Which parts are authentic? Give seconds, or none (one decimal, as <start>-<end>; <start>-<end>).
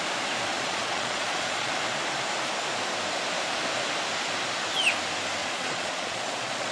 0.0-0.5; 1.7-5.4